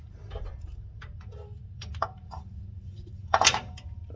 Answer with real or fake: fake